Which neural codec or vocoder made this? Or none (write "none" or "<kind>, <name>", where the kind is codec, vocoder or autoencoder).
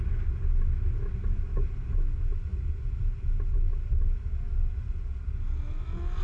none